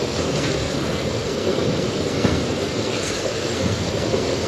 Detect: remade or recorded remade